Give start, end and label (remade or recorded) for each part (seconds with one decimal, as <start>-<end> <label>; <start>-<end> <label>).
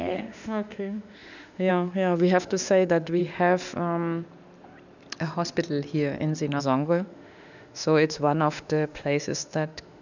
0.0-3.2 remade; 3.2-6.6 recorded; 6.6-10.0 remade